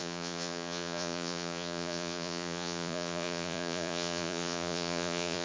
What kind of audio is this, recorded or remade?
remade